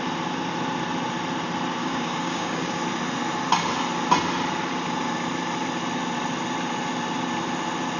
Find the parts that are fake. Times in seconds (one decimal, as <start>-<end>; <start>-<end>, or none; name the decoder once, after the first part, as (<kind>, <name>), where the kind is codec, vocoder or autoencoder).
1.8-2.8 (codec, DAC)